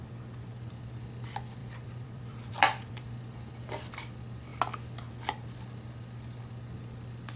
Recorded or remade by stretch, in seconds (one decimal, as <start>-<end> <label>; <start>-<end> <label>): 0.0-1.6 recorded; 1.6-3.5 remade; 3.5-7.4 recorded